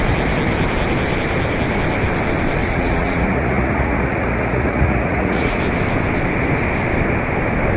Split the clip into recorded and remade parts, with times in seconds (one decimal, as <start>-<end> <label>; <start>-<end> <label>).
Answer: 0.0-2.6 recorded; 2.6-5.6 remade; 5.6-7.8 recorded